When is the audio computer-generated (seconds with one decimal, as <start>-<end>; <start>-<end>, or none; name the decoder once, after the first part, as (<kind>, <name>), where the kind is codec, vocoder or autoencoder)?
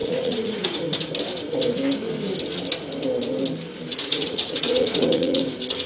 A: 0.0-0.8 (vocoder, Vocos); 3.9-5.4